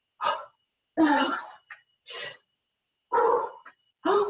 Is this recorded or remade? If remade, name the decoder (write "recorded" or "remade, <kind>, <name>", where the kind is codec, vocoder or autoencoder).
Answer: recorded